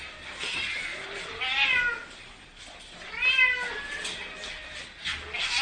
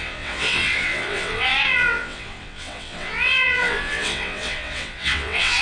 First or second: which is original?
first